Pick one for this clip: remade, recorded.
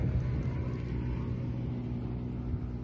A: recorded